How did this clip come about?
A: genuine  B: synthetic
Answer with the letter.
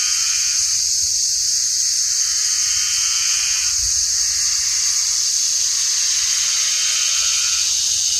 A